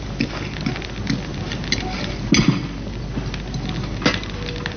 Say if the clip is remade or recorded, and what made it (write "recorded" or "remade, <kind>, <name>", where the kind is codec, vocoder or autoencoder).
recorded